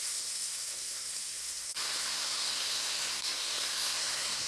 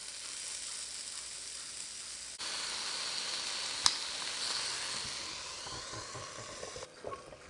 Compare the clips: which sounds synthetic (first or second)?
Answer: first